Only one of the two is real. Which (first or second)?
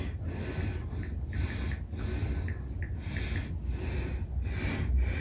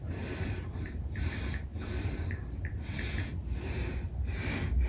first